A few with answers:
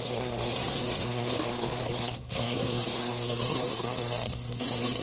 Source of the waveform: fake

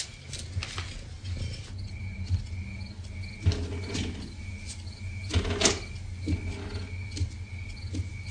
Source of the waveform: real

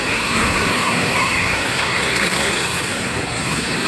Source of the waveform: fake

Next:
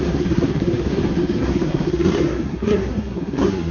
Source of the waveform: fake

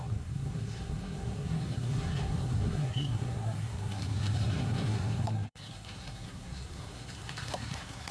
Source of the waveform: fake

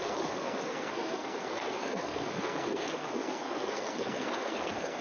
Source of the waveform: fake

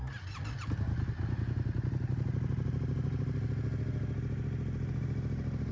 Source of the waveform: real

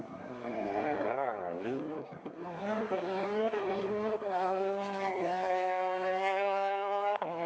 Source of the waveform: fake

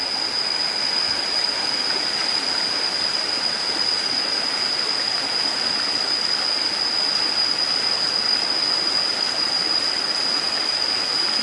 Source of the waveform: real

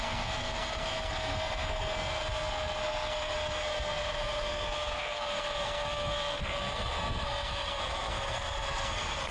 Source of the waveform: fake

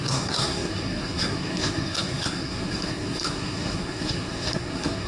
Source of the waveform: fake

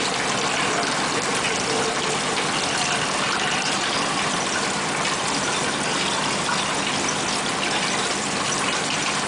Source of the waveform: real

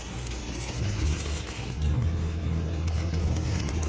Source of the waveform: fake